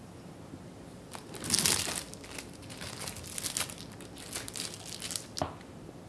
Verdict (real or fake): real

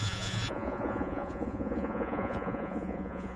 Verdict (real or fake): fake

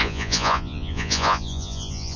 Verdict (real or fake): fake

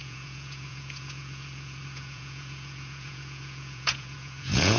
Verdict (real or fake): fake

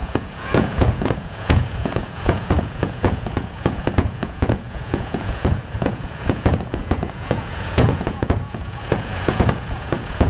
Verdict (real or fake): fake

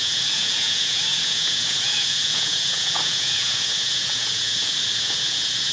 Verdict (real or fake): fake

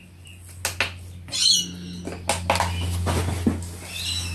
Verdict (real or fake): real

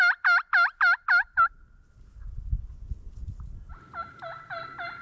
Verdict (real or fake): real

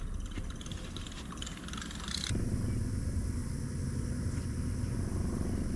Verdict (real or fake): real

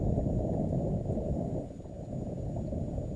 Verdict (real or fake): real